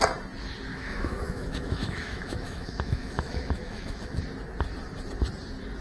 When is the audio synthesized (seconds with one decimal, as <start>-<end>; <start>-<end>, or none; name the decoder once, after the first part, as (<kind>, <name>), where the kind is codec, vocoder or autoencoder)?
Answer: 0.7-4.2 (autoencoder, DAC-VAE)